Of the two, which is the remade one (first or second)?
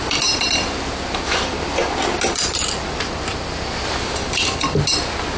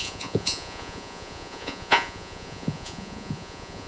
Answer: second